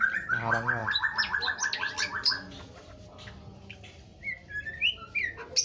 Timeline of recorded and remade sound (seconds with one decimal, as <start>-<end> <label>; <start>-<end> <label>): 0.0-5.6 recorded